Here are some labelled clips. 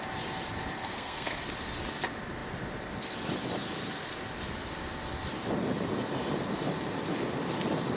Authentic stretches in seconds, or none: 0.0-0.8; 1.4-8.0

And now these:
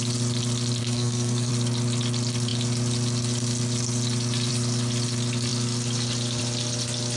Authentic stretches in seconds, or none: 0.0-0.8; 1.5-7.2

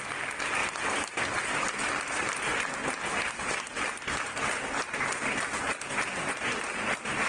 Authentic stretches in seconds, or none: 0.0-7.3

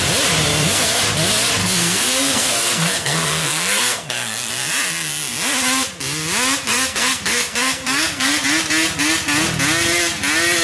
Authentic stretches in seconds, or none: 0.0-0.5; 1.0-1.6; 4.5-6.7; 8.3-10.6

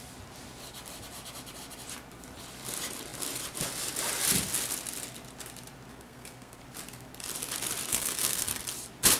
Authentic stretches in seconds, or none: 0.0-5.9; 6.6-7.9; 8.6-9.2

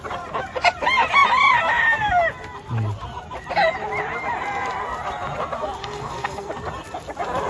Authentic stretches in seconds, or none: 0.0-5.8; 6.5-7.5

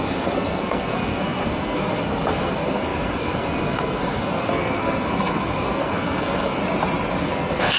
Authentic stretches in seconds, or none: 6.6-7.2

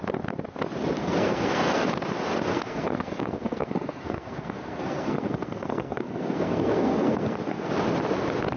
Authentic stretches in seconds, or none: 0.0-1.0; 1.9-2.5; 7.7-8.6